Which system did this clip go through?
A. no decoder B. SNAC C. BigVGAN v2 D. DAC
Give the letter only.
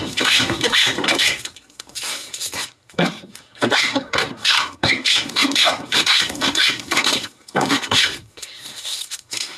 B